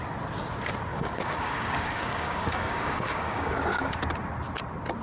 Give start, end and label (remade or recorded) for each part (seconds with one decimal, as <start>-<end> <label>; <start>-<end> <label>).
0.0-0.9 recorded; 0.9-3.9 remade; 3.9-5.0 recorded